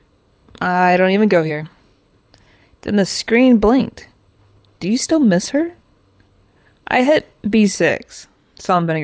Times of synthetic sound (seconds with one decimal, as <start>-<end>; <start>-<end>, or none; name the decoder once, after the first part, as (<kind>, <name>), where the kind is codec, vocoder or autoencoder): 0.0-3.1 (codec, HILCodec); 3.8-7.9; 8.6-9.0